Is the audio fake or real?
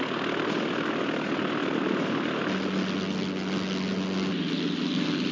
real